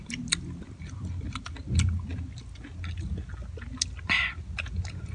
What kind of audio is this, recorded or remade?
recorded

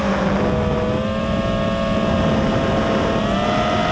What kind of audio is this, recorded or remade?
recorded